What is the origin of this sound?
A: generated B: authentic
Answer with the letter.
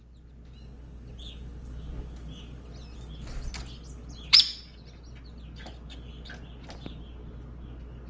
B